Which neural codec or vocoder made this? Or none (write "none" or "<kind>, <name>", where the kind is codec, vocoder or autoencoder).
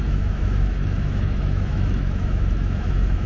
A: autoencoder, DAC-VAE